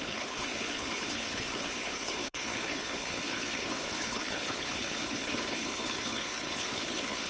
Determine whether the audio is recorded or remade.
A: remade